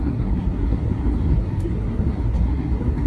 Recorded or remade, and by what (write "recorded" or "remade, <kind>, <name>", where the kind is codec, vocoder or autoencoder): remade, codec, SNAC